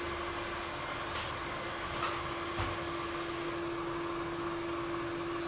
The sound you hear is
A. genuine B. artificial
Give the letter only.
A